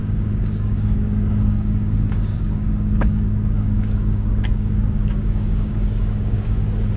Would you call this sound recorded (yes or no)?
no